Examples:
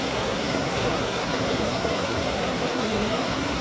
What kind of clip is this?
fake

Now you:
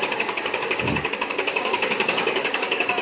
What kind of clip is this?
fake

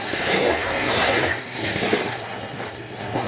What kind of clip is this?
fake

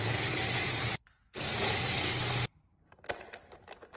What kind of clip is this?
real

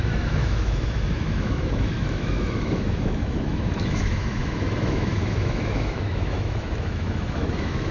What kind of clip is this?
fake